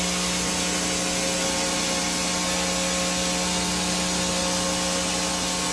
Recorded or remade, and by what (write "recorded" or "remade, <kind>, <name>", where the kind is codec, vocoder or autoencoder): recorded